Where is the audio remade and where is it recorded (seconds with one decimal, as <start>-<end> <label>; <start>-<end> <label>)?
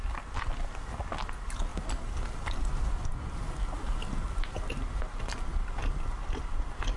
0.0-7.0 recorded